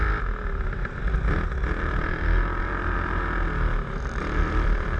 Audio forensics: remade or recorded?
recorded